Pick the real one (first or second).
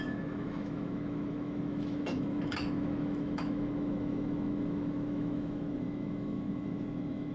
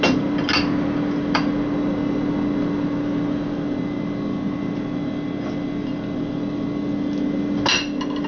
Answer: second